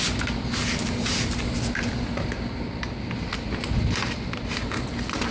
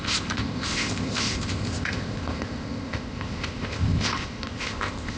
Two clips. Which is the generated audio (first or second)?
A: second